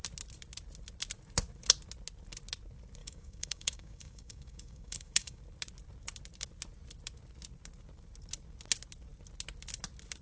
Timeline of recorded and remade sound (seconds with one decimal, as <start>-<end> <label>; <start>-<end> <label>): 0.0-3.0 recorded; 3.0-5.4 remade; 5.4-10.2 recorded